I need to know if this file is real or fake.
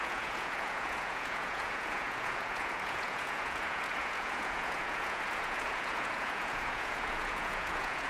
fake